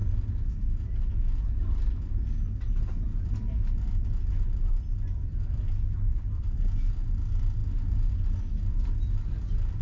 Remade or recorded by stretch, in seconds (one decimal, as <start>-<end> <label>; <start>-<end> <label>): 0.0-9.8 recorded